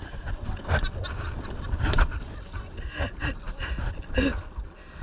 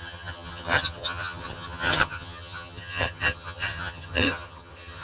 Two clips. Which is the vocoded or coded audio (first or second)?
second